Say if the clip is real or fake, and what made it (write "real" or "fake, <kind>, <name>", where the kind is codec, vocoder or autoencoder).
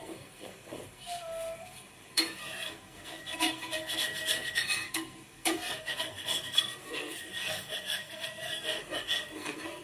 fake, codec, SNAC